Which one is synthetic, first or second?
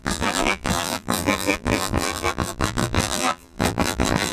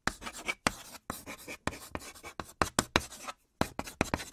first